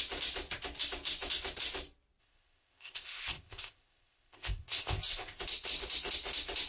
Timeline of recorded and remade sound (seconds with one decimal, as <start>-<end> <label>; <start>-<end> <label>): 0.0-2.2 recorded; 2.2-5.4 remade; 5.4-6.7 recorded